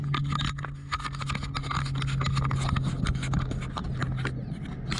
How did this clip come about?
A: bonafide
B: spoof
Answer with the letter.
A